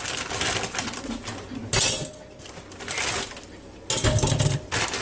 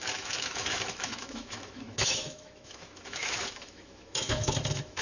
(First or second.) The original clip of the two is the first